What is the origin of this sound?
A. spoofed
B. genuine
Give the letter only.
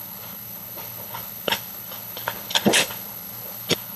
A